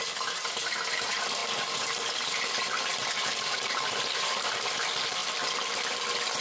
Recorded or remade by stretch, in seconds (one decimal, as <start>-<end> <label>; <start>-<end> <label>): 0.0-5.2 recorded; 5.2-6.0 remade; 6.0-6.4 recorded

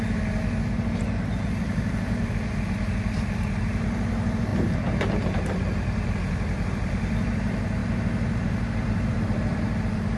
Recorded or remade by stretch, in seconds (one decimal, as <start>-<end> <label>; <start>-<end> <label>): 0.0-7.8 remade; 7.8-8.4 recorded; 8.4-10.2 remade

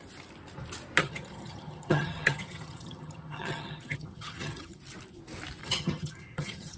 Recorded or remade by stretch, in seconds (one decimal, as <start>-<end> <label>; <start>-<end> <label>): 0.0-1.0 recorded; 1.0-4.8 remade; 4.8-5.6 recorded; 5.6-6.8 remade

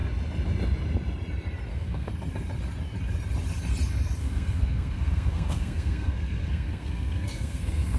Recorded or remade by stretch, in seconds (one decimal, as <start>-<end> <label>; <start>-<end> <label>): 0.0-1.7 recorded; 1.7-2.1 remade; 2.1-4.2 recorded; 4.2-8.0 remade

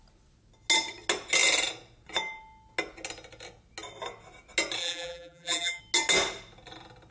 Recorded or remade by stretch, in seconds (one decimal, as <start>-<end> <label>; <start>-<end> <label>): 0.0-4.8 recorded; 4.8-5.8 remade; 5.8-7.1 recorded

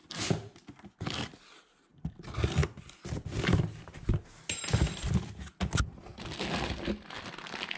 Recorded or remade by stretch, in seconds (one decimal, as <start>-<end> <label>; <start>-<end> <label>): 0.0-7.8 recorded